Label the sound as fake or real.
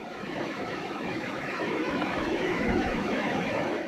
fake